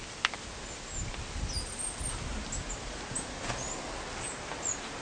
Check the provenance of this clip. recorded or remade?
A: recorded